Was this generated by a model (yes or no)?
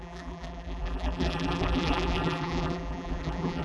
yes